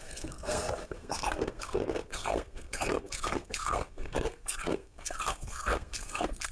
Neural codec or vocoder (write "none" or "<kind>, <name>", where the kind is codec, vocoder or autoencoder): codec, SNAC